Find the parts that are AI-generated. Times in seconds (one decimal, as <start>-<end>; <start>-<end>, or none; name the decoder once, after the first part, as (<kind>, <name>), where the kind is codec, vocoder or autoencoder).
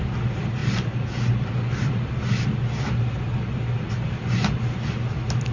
none